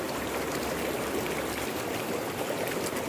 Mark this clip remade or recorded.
recorded